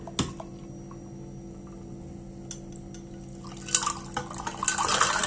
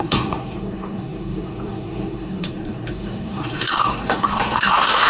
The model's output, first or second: second